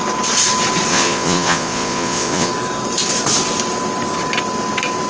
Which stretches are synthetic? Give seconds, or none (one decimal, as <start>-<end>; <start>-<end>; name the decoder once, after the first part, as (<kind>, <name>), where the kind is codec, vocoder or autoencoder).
0.9-2.5 (vocoder, Vocos)

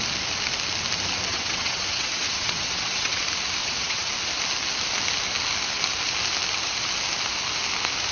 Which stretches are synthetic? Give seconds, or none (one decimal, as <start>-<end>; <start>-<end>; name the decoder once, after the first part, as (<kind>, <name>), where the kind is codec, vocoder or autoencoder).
1.3-3.2 (vocoder, WaveNeXt); 3.6-4.1

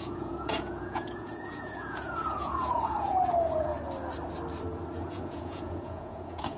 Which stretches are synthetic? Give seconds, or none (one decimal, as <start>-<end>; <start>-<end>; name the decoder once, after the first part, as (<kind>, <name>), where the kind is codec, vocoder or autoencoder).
0.0-3.7 (vocoder, Vocos); 5.0-6.6

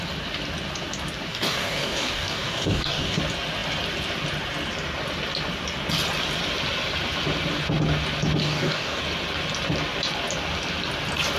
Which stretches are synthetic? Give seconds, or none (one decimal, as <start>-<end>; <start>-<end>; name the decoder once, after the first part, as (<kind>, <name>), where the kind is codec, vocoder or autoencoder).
1.3-3.2 (codec, DAC); 8.4-9.0

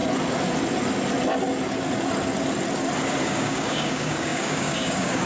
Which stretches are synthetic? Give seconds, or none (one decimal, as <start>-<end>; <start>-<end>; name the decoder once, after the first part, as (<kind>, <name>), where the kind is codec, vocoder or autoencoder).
3.2-5.3 (codec, DAC)

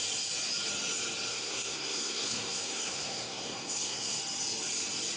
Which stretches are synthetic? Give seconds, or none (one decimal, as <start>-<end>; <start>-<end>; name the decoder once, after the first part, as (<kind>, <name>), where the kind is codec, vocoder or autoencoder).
1.3-4.2 (codec, SNAC)

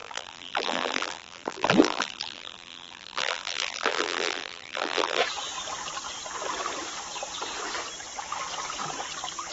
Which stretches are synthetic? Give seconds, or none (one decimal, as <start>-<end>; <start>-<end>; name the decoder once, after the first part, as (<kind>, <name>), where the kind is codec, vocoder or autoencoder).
0.0-5.2 (vocoder, BigVGAN v2)

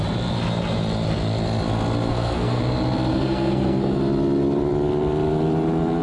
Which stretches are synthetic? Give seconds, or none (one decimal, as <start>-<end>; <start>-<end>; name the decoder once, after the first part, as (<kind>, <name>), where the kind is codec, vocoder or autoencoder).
2.1-2.6 (codec, SNAC); 3.1-4.0